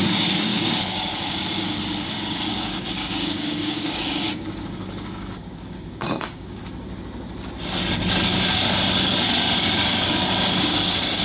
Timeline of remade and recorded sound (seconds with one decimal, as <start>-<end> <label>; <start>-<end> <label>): 0.0-6.6 remade; 6.6-9.6 recorded; 9.6-11.2 remade